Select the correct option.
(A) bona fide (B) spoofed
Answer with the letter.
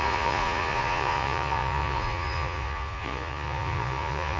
B